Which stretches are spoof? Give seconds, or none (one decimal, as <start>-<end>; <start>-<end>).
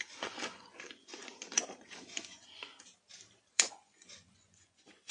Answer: 0.0-2.7; 3.5-5.1